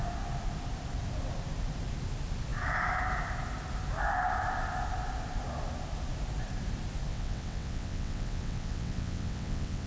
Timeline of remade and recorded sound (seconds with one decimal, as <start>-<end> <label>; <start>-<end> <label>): 0.0-7.1 recorded; 7.1-9.9 remade